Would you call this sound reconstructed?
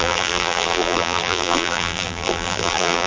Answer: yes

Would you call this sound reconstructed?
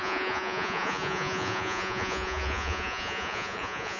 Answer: yes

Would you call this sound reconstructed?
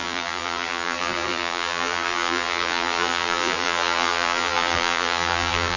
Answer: yes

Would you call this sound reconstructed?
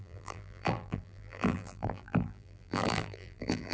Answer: yes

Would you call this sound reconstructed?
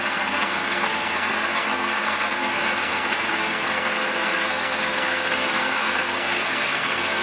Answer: yes